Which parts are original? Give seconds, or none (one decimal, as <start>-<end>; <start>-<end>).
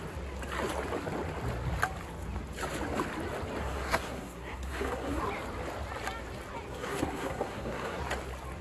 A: 0.0-3.6; 5.2-6.7; 8.0-8.6